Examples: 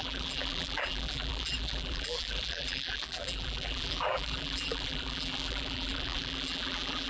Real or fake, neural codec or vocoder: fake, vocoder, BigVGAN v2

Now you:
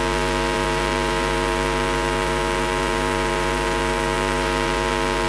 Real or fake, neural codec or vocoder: fake, vocoder, BigVGAN v2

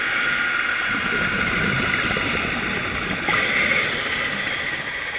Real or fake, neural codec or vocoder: real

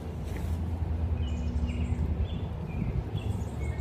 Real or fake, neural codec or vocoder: real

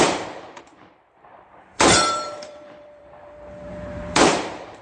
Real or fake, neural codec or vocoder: fake, vocoder, BigVGAN v2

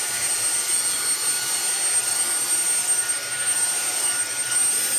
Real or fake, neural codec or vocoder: real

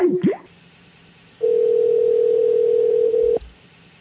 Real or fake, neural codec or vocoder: fake, vocoder, BigVGAN v2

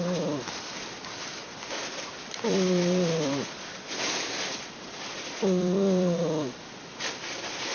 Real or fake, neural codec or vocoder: fake, vocoder, BigVGAN v2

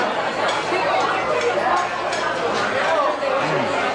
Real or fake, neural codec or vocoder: real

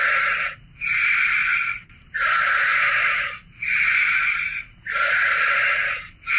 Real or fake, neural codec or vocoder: real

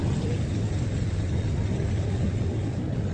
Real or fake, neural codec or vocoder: fake, vocoder, BigVGAN v2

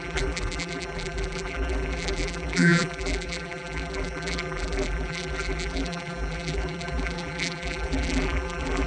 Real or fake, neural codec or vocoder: fake, vocoder, BigVGAN v2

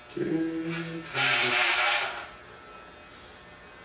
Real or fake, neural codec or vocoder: real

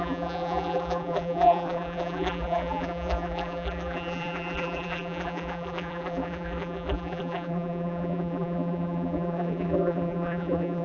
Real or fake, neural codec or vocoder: fake, vocoder, BigVGAN v2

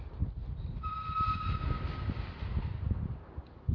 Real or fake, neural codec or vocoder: real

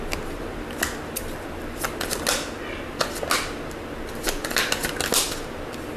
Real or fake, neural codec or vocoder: real